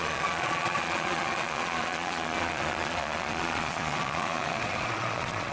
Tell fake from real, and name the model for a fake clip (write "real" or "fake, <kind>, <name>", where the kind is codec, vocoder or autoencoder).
fake, vocoder, Vocos